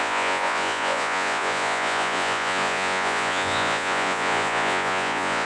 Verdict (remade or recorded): remade